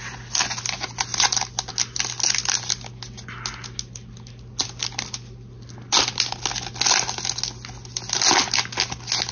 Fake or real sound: real